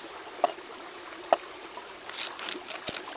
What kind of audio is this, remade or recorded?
recorded